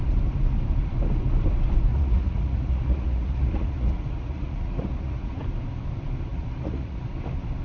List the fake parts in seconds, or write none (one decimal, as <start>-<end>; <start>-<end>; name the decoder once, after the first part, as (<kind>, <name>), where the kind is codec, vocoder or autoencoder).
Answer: 1.9-5.4 (vocoder, Vocos); 6.3-7.0